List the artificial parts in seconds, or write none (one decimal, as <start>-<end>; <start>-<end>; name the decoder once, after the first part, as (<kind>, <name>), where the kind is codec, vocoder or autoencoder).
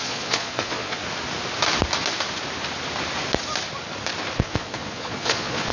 0.0-1.0 (vocoder, Vocos); 4.4-5.7